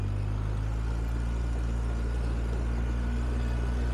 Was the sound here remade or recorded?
recorded